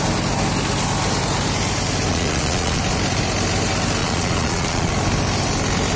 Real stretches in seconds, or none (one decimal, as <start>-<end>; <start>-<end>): 0.0-2.1; 2.8-4.0; 4.9-6.0